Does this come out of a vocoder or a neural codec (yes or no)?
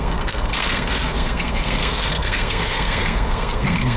yes